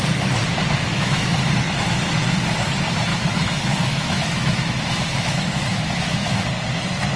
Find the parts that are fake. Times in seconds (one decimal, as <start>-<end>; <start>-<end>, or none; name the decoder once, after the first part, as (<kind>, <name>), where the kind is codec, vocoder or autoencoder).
0.9-1.5 (autoencoder, DAC-VAE); 3.1-6.5